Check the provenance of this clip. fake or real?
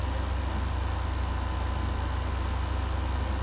real